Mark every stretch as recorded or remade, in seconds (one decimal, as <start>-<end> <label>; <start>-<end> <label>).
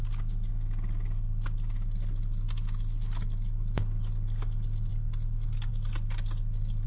0.0-6.9 recorded